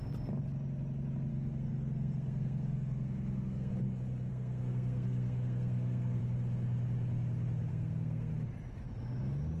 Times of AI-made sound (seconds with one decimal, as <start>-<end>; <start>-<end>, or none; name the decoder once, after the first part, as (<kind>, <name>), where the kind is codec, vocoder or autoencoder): 1.3-3.7 (codec, SNAC); 4.3-6.2; 7.7-8.3